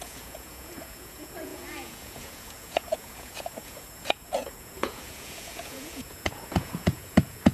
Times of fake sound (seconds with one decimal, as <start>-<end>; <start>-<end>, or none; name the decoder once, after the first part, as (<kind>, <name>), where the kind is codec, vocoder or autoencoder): 0.0-7.5 (vocoder, Vocos)